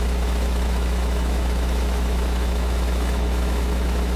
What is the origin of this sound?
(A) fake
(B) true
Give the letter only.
A